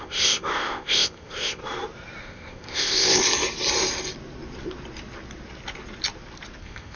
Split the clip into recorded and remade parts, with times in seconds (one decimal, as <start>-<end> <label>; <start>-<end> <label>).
0.0-1.6 remade; 1.6-2.2 recorded; 2.2-3.2 remade; 3.2-6.6 recorded; 6.6-7.0 remade